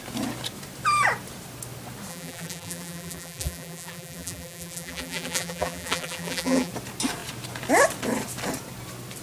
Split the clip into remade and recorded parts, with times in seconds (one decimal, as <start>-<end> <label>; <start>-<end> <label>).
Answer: 0.0-2.1 recorded; 2.1-6.7 remade; 6.7-9.2 recorded